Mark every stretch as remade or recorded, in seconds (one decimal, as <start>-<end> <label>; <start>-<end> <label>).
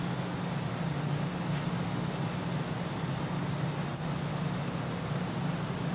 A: 0.0-5.9 recorded